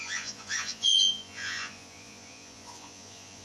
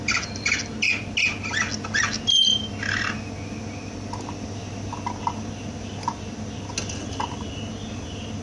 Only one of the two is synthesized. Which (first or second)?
first